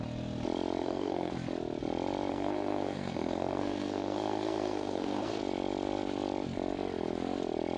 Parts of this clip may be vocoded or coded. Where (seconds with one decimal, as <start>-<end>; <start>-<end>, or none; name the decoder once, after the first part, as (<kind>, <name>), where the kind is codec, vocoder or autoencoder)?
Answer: 0.8-1.3 (codec, SNAC); 2.3-5.4